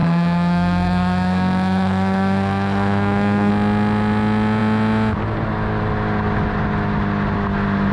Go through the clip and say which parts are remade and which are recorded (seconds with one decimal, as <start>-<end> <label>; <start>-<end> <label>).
0.0-3.5 remade; 3.5-7.9 recorded